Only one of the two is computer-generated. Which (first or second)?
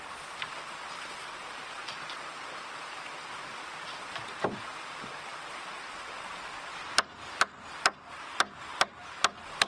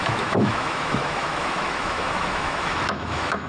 second